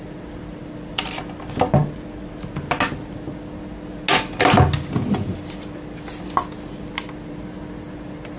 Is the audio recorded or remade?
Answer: recorded